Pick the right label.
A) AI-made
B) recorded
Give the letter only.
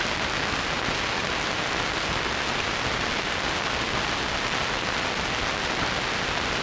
B